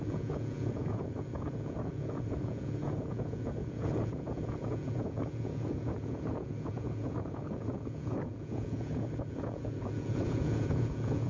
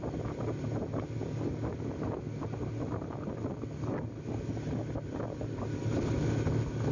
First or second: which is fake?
first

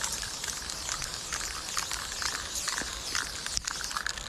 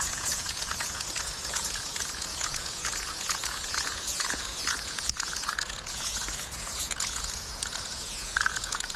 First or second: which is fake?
second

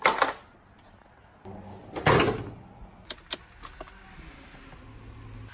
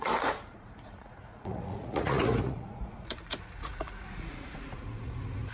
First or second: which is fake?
second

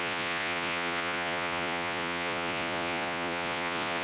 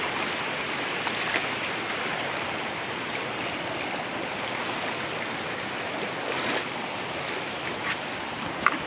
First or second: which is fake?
first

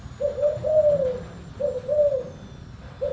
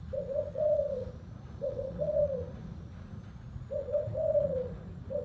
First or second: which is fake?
second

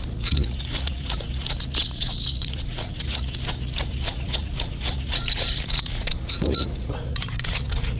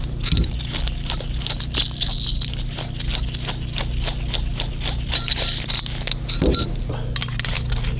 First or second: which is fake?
first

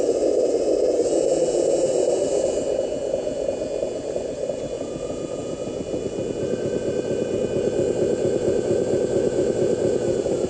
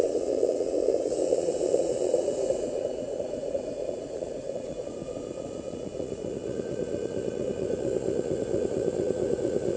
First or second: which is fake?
second